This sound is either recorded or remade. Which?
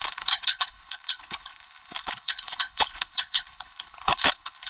remade